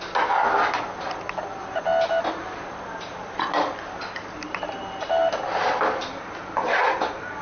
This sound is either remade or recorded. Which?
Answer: recorded